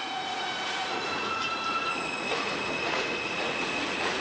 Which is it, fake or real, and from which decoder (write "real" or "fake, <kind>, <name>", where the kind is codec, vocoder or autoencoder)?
fake, vocoder, Vocos